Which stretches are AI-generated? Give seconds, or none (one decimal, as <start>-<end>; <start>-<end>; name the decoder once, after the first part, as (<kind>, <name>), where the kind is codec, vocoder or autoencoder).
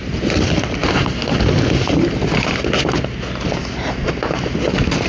none